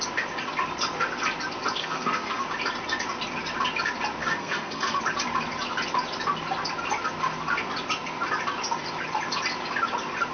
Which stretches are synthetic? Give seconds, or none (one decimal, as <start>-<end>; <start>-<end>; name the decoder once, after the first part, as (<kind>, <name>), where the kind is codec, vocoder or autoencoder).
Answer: 1.8-2.4 (codec, SNAC); 4.2-5.0